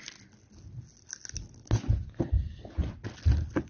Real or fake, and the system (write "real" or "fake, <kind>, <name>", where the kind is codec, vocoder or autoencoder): real